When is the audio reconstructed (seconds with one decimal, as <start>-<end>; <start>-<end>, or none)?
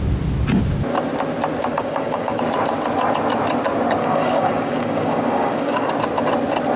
1.7-2.4; 4.0-5.9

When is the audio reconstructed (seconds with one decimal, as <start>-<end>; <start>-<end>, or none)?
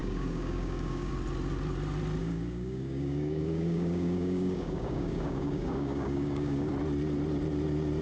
0.0-1.1; 2.2-6.7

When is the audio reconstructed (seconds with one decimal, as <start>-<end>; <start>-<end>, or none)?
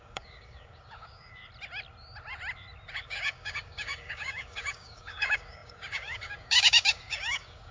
0.0-1.4; 2.9-7.7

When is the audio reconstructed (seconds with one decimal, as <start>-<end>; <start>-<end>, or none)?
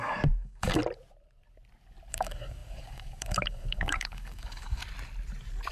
0.0-0.8; 2.1-4.8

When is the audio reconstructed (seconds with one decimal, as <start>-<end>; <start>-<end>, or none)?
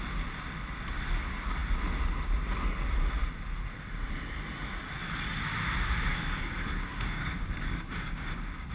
6.1-8.7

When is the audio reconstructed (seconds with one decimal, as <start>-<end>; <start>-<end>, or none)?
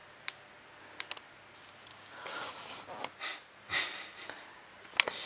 1.9-2.5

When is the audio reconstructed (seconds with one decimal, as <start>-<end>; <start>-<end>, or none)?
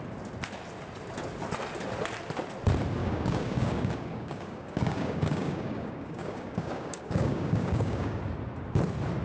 3.0-8.2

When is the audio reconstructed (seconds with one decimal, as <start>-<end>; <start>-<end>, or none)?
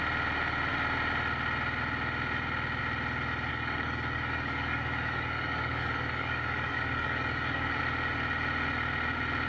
3.5-7.8